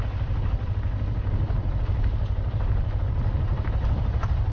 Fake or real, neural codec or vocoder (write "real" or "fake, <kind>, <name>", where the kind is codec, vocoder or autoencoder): real